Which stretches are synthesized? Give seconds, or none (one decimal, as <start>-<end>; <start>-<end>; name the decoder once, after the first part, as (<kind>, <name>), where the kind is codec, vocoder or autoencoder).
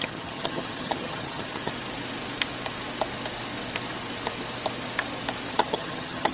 0.0-1.7 (vocoder, HiFi-GAN); 5.5-6.3